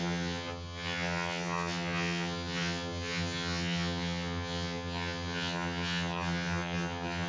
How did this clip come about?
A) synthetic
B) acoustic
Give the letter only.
A